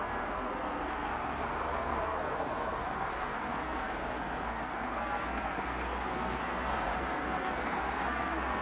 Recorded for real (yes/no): no